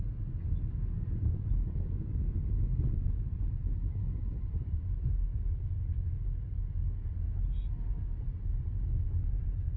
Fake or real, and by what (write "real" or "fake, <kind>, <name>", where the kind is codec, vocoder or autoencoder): real